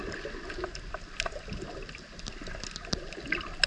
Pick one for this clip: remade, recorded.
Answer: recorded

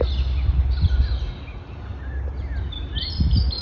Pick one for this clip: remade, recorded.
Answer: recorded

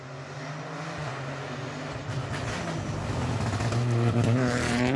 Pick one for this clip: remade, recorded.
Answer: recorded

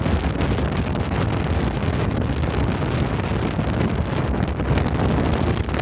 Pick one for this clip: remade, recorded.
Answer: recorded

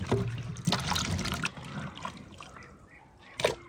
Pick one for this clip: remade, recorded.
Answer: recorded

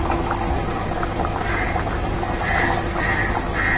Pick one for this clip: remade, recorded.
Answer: recorded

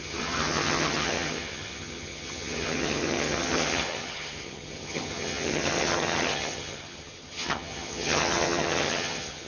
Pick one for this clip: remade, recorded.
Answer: remade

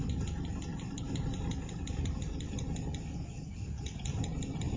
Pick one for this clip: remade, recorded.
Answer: recorded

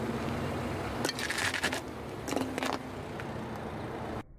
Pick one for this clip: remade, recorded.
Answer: recorded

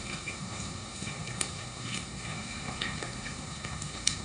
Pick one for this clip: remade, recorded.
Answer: remade